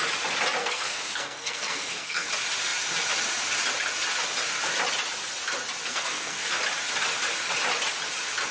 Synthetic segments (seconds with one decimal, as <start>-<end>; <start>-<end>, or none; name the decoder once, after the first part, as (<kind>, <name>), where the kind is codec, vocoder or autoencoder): 0.6-2.3 (codec, SNAC); 5.9-6.5